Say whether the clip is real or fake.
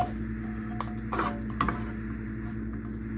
real